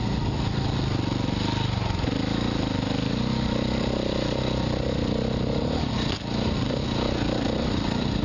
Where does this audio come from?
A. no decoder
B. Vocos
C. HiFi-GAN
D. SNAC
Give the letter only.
A